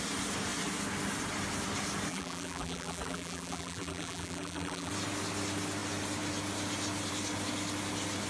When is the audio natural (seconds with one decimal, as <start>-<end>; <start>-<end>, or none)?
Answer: 0.0-2.1; 4.9-8.3